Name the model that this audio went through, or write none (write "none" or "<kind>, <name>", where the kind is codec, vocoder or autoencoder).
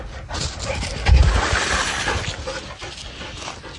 none